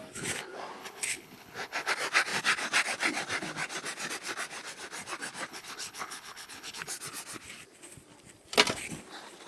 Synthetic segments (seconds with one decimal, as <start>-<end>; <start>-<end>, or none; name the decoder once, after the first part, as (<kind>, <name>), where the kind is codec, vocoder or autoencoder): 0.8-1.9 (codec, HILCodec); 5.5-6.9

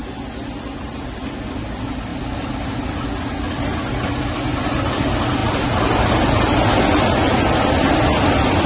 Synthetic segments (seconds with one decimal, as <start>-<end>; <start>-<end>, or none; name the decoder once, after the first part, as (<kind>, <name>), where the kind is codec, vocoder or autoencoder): none

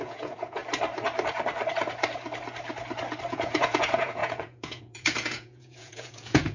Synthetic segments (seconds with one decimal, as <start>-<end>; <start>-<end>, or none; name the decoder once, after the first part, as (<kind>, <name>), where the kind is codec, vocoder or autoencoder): 0.0-0.6 (vocoder, Vocos); 3.3-6.5